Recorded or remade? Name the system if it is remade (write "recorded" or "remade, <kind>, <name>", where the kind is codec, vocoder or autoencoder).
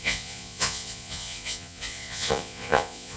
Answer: remade, vocoder, Vocos